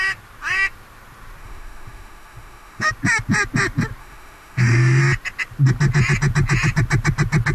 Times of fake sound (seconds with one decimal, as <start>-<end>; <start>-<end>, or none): 1.4-2.9; 4.0-5.0